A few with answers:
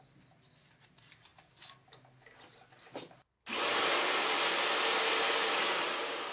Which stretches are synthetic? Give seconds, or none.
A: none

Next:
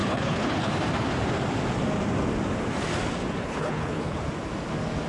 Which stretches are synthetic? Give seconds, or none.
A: 0.0-0.7 (codec, HILCodec); 3.4-4.2

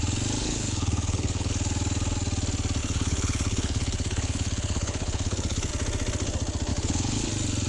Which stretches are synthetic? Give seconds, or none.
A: 0.4-1.5 (codec, HILCodec); 2.8-5.7; 6.7-7.3

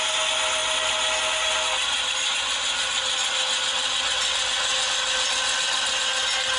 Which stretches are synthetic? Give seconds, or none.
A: none

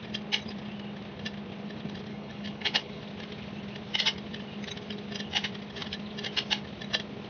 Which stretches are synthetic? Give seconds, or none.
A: 2.1-3.0 (codec, HILCodec)

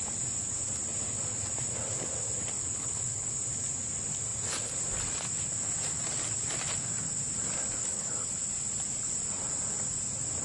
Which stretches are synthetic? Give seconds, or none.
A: 2.6-3.3 (codec, HILCodec); 7.8-8.3

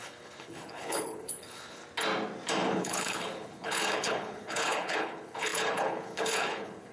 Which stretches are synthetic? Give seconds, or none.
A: 0.0-1.8 (codec, HILCodec); 2.7-6.9